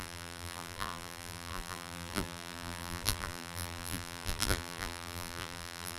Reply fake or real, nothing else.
fake